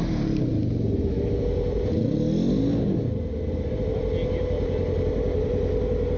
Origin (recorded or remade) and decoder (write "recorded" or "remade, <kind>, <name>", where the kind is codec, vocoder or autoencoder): recorded